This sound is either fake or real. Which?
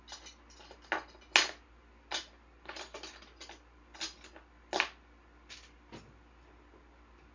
real